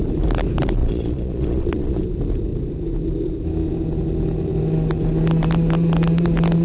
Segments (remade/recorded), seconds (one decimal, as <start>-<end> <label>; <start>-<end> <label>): 0.0-0.8 recorded; 0.8-2.0 remade; 2.0-6.6 recorded